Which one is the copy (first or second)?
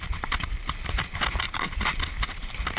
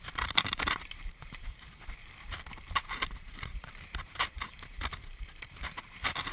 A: second